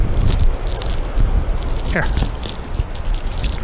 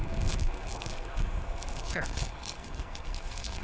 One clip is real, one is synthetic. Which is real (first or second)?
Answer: first